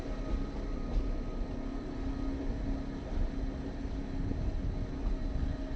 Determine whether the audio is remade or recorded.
recorded